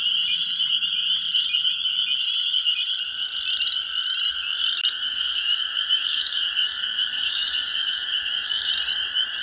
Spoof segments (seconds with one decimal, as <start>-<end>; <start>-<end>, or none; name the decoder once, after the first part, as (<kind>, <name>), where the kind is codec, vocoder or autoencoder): 5.1-8.7 (codec, DAC)